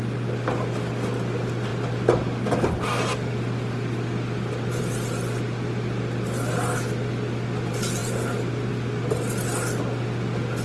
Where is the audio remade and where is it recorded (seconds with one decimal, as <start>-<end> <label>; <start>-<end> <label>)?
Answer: 0.0-10.6 recorded